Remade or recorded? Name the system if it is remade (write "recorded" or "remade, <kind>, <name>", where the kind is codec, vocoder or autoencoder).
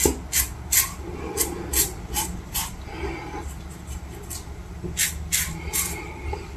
recorded